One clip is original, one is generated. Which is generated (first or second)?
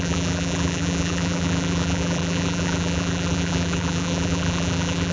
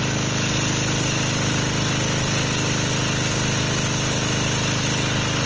first